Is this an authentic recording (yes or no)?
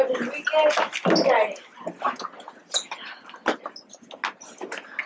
yes